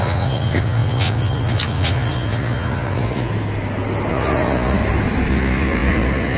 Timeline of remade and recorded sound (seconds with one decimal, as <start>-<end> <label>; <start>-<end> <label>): 0.0-3.3 remade; 3.3-4.1 recorded; 4.1-4.8 remade; 4.8-5.3 recorded; 5.3-6.4 remade